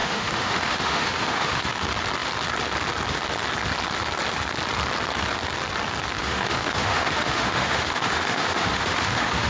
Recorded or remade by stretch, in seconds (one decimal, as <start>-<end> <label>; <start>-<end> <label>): 0.0-1.6 remade; 1.6-6.2 recorded; 6.2-9.5 remade